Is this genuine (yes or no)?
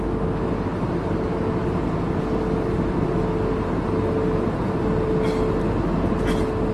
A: yes